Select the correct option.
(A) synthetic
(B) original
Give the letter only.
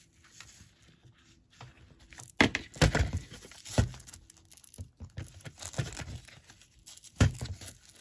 B